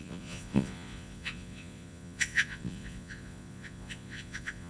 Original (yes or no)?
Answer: no